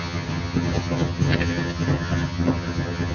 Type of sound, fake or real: fake